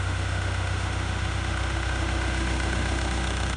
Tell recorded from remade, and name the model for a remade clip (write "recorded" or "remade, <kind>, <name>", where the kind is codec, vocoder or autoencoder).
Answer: remade, autoencoder, DAC-VAE